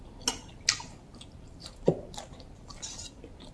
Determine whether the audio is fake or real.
real